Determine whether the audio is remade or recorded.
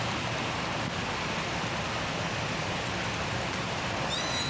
recorded